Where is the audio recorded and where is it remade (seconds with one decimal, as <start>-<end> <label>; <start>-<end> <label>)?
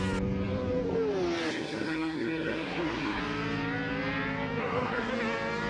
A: 0.0-1.5 recorded; 1.5-3.2 remade; 3.2-4.6 recorded; 4.6-5.1 remade; 5.1-5.7 recorded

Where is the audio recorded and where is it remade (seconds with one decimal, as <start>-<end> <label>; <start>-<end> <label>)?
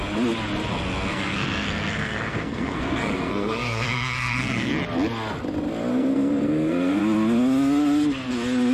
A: 0.0-1.1 recorded; 1.1-4.7 remade; 4.7-5.9 recorded; 5.9-7.0 remade; 7.0-8.7 recorded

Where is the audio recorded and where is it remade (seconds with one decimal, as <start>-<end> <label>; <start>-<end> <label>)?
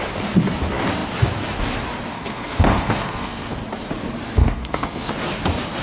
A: 0.0-2.1 recorded; 2.1-3.5 remade; 3.5-4.4 recorded; 4.4-5.1 remade; 5.1-5.8 recorded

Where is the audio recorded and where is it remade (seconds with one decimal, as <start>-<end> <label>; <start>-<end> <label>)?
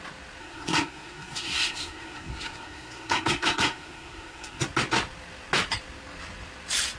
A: 0.0-0.4 recorded; 0.4-4.6 remade; 4.6-7.0 recorded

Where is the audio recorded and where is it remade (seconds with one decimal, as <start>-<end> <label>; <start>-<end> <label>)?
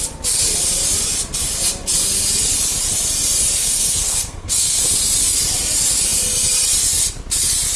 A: 0.0-3.6 recorded; 3.6-4.8 remade; 4.8-7.8 recorded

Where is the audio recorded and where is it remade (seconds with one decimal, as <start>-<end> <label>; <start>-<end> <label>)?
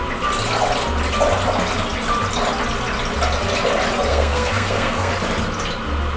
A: 0.0-4.1 recorded; 4.1-5.1 remade; 5.1-6.2 recorded